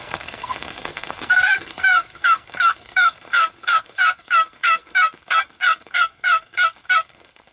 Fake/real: fake